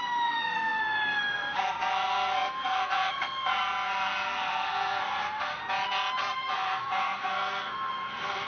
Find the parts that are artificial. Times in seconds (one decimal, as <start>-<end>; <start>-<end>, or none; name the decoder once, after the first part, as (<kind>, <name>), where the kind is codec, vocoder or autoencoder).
0.0-5.6 (codec, SNAC); 6.2-8.5